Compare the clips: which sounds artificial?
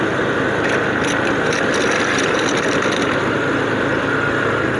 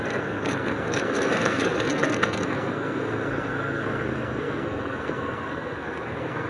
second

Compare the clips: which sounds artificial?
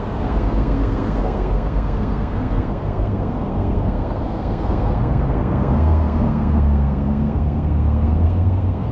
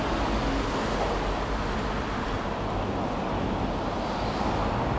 first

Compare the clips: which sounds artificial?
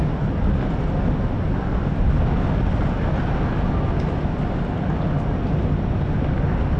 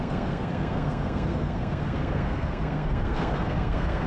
second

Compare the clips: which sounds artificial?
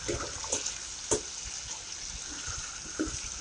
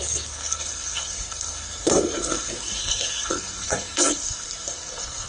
second